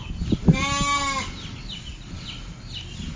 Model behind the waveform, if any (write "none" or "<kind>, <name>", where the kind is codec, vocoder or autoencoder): none